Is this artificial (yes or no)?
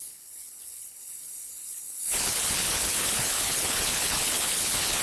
yes